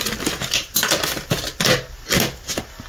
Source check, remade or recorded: recorded